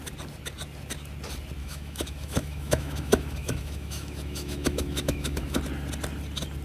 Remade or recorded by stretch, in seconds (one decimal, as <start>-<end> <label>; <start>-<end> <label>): 0.0-1.6 recorded; 1.6-5.6 remade; 5.6-6.6 recorded

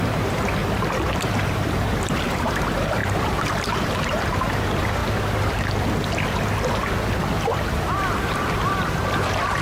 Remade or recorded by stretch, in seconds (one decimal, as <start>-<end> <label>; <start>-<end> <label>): 0.0-0.6 remade; 0.6-1.1 recorded; 1.1-5.0 remade; 5.0-7.3 recorded; 7.3-9.6 remade

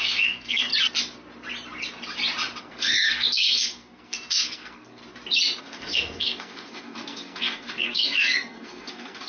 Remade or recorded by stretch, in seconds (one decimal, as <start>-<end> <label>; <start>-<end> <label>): 0.0-0.7 remade; 0.7-2.6 recorded; 2.6-5.0 remade; 5.0-5.6 recorded; 5.6-9.3 remade

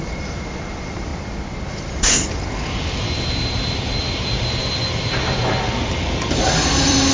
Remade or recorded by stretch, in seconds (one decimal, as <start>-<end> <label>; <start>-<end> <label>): 0.0-1.1 remade; 1.1-1.7 recorded; 1.7-7.1 remade

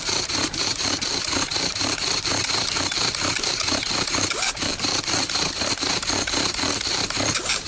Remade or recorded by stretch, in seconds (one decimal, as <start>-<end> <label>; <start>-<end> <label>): 0.0-7.7 remade

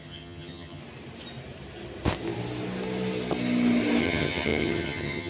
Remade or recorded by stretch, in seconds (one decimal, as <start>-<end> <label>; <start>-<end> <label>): 0.0-0.8 remade; 0.8-4.0 recorded; 4.0-5.3 remade